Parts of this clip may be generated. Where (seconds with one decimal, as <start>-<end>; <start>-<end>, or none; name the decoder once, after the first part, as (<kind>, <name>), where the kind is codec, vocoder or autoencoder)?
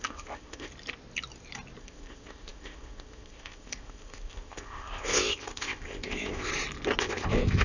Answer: 0.0-0.7 (codec, ZipCodec); 1.8-6.5; 7.0-7.6